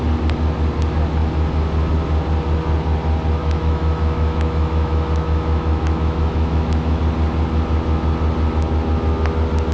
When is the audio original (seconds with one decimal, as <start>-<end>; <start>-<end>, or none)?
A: 0.0-3.4; 7.0-9.7